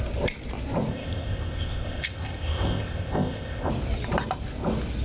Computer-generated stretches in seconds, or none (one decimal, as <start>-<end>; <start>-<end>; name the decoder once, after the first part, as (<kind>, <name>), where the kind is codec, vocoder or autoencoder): 0.9-3.7 (codec, ZipCodec)